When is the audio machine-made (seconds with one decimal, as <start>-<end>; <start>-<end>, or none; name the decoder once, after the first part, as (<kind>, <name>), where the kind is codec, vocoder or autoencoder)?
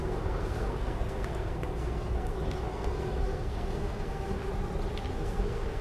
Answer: 0.0-4.4 (codec, SNAC); 5.1-5.8